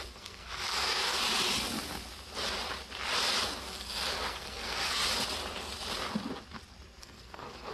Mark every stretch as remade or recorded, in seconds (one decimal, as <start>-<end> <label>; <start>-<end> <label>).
0.0-1.2 remade; 1.2-3.6 recorded; 3.6-5.0 remade; 5.0-7.0 recorded; 7.0-7.7 remade